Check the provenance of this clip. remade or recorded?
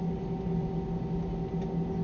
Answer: recorded